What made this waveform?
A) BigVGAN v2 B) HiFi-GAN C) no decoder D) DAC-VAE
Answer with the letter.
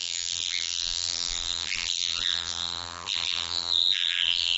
A